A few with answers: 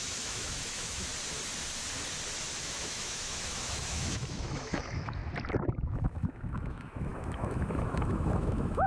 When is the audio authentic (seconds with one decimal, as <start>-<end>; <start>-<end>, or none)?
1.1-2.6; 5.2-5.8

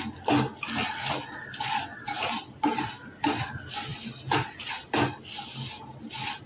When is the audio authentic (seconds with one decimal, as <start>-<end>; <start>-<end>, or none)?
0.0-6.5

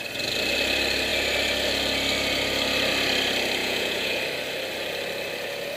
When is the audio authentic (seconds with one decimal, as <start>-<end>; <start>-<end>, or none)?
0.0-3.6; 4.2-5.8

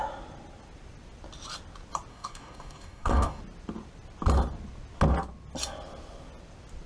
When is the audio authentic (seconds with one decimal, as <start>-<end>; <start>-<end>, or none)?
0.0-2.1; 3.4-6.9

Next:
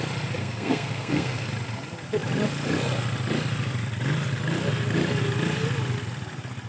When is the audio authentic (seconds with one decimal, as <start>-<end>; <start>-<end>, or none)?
0.0-0.4; 1.5-6.7

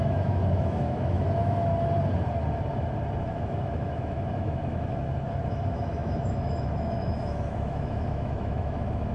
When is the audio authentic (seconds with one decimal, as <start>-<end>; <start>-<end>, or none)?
1.7-3.2

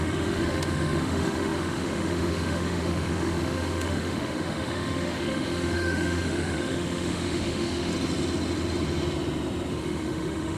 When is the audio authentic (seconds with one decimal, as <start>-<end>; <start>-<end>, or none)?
7.9-9.7

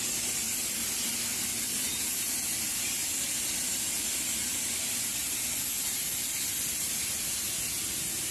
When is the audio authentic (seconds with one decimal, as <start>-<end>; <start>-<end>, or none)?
0.0-8.3